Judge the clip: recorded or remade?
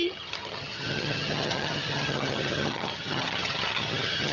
remade